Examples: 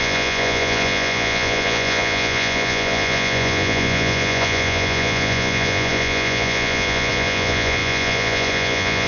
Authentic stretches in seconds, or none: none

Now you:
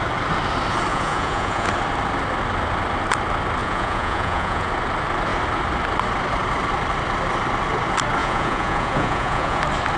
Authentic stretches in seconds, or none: 0.0-0.9; 1.7-3.6; 4.7-8.2; 9.6-10.0